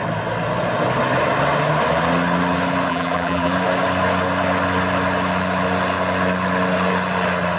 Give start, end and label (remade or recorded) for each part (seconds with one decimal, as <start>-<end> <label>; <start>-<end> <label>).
0.0-2.9 recorded; 2.9-3.5 remade; 3.5-7.6 recorded